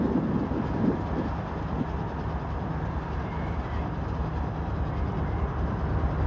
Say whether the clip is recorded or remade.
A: recorded